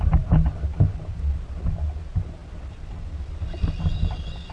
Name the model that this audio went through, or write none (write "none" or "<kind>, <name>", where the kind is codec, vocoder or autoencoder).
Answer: none